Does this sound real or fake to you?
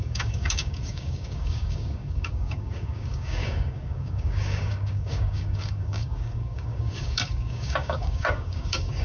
fake